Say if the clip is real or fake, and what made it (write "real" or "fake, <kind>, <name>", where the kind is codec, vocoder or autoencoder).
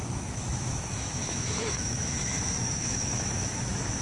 fake, autoencoder, DAC-VAE